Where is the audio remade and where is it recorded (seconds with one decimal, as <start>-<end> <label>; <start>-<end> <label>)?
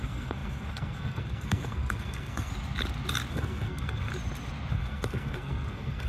0.0-2.5 remade; 2.5-3.3 recorded; 3.3-4.1 remade; 4.1-4.7 recorded; 4.7-6.1 remade